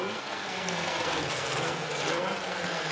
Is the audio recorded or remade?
remade